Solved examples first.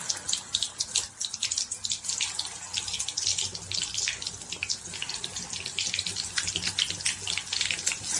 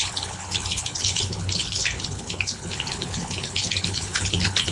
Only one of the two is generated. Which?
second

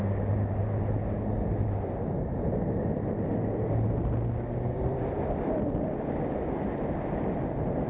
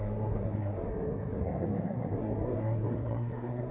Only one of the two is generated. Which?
second